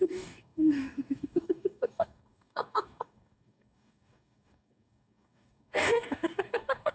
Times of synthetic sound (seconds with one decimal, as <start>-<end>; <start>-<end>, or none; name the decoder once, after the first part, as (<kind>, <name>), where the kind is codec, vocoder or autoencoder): 0.0-6.9 (codec, DAC)